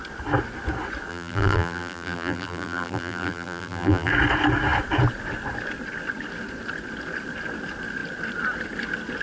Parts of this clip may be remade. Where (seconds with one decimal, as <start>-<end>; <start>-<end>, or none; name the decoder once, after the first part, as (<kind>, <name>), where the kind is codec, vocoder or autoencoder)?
1.1-4.1 (vocoder, BigVGAN v2)